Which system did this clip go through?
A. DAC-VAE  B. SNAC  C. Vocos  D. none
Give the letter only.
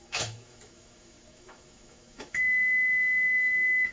A